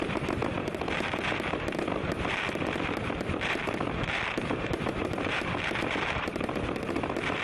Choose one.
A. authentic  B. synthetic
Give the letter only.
B